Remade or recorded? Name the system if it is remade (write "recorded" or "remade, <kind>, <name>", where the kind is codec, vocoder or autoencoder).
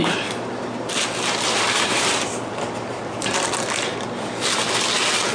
recorded